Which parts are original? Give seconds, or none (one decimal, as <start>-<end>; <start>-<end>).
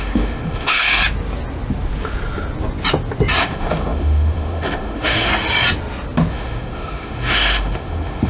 1.0-3.4; 5.3-6.3